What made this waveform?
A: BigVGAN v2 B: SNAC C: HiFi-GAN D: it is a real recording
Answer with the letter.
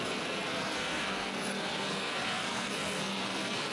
B